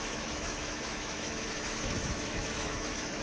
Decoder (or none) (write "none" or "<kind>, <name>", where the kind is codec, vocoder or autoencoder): autoencoder, DAC-VAE